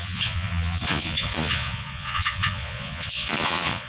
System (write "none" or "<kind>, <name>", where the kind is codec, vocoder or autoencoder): vocoder, Vocos